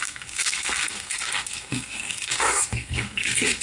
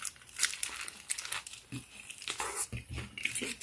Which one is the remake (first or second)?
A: first